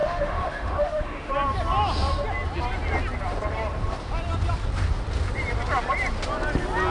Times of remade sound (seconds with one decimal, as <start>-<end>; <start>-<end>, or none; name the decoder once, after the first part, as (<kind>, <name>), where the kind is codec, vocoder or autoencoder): 0.0-1.3 (autoencoder, DAC-VAE)